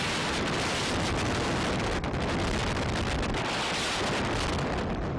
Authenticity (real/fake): real